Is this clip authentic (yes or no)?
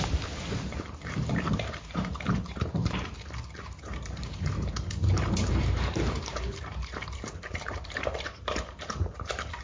no